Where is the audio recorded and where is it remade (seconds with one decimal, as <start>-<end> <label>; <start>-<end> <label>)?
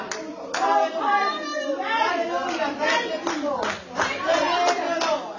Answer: 0.0-5.4 recorded